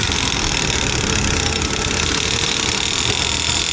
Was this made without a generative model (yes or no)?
yes